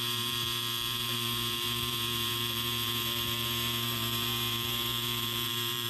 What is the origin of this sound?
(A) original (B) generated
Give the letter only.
B